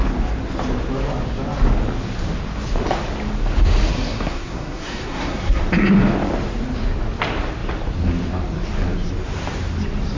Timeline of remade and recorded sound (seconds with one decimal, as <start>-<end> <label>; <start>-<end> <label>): 0.0-3.9 recorded; 3.9-5.6 remade; 5.6-10.2 recorded